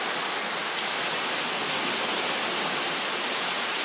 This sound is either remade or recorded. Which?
recorded